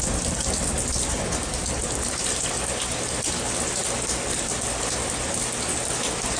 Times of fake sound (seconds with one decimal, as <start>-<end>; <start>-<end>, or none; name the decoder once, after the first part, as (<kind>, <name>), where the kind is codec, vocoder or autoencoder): none

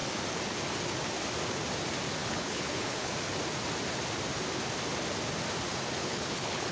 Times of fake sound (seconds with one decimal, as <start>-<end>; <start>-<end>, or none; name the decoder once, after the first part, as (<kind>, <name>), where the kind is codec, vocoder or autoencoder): 2.2-3.1 (codec, HILCodec); 6.0-6.7

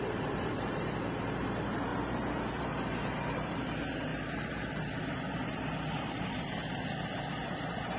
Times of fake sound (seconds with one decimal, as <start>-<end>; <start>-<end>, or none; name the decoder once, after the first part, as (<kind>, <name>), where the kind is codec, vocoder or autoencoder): 0.0-1.9 (vocoder, BigVGAN v2); 2.6-8.0

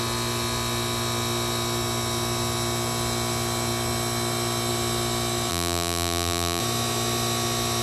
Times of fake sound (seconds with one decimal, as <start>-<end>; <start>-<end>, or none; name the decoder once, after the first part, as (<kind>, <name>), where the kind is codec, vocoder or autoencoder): 5.5-6.6 (vocoder, BigVGAN v2)

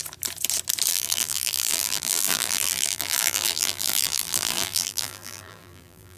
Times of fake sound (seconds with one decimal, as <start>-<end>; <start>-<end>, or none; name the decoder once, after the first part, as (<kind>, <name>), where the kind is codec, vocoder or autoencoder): 0.9-6.2 (vocoder, BigVGAN v2)

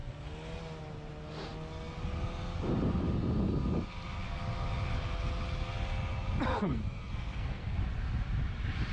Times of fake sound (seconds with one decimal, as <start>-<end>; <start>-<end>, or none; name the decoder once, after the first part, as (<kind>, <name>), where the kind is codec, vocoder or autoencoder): 6.5-7.8 (codec, SNAC)

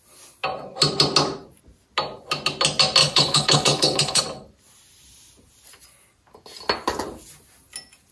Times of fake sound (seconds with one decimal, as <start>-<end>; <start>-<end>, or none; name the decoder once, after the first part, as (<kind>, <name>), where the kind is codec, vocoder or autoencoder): 3.0-4.2 (codec, HILCodec)